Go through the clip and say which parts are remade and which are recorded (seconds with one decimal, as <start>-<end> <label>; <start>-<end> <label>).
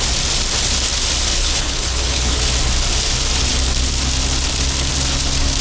0.0-1.4 recorded; 1.4-2.4 remade; 2.4-5.6 recorded